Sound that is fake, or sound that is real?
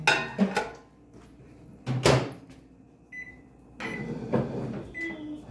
real